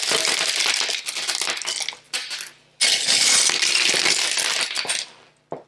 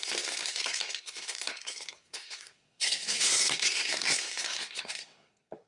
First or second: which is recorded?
first